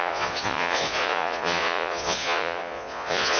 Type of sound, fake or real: fake